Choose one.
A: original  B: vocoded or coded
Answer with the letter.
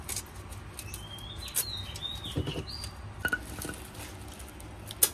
A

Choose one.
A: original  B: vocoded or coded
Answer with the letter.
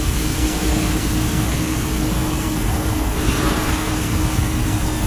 B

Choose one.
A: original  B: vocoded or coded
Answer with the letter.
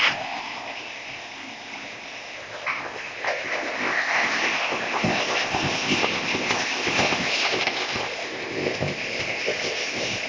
B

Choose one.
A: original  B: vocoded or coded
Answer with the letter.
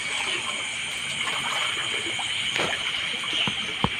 A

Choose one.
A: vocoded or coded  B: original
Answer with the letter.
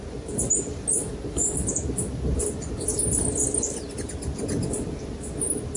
B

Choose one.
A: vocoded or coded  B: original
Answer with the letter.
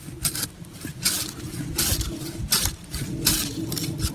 B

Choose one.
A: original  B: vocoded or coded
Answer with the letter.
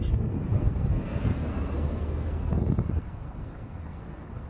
B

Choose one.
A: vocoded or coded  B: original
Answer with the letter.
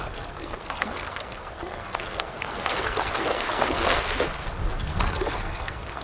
A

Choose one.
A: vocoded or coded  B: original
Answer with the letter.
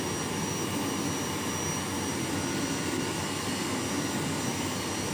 B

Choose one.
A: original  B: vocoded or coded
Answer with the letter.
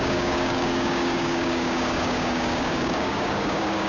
B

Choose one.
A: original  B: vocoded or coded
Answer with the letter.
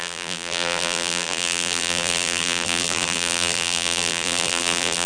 B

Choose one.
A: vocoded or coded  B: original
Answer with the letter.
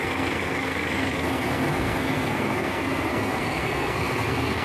A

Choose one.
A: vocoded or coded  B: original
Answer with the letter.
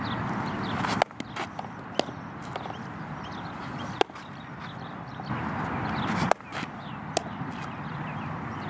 B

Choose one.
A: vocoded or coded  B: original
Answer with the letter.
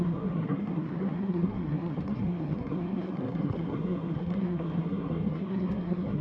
A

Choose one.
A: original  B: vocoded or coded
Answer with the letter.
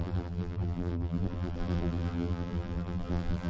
B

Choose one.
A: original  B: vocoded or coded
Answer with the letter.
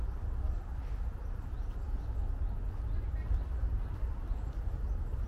A